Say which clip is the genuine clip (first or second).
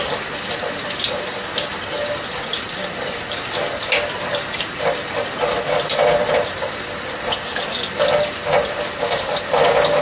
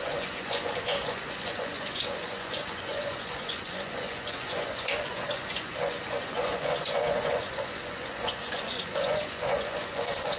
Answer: first